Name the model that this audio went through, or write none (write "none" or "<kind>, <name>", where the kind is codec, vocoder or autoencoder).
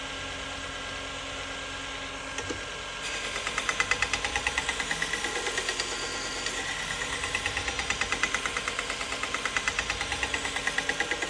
none